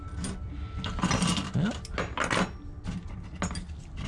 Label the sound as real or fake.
real